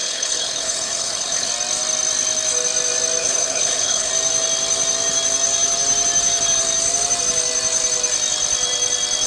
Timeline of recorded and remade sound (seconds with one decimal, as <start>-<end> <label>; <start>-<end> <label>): 0.0-1.5 remade; 1.5-3.2 recorded; 3.2-4.1 remade; 4.1-9.3 recorded